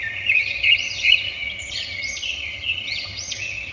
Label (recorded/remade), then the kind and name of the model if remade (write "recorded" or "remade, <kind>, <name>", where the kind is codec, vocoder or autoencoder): remade, vocoder, HiFi-GAN